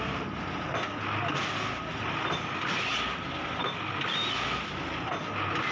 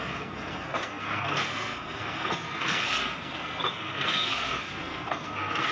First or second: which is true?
first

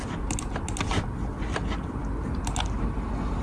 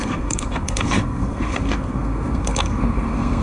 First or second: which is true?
first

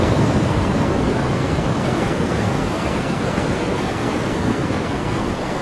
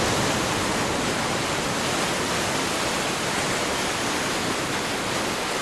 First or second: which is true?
second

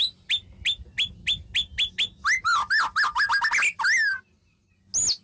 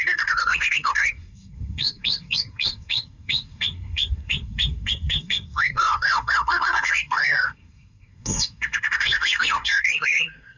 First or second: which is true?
first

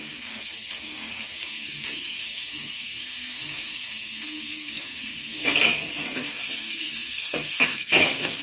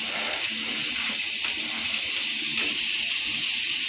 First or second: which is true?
second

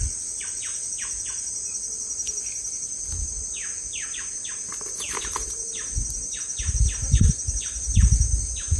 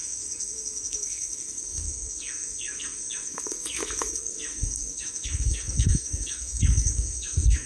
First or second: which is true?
first